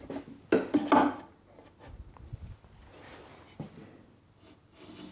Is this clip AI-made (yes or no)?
no